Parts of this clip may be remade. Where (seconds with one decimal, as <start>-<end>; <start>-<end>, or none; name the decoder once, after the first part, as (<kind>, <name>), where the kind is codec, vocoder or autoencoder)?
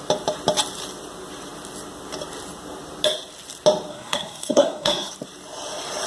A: 3.9-5.1 (codec, SNAC)